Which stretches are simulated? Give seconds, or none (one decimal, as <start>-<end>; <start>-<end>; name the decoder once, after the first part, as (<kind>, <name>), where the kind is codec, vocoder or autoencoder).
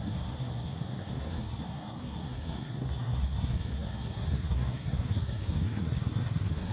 0.0-6.7 (codec, SNAC)